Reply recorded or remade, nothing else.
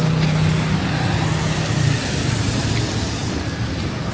recorded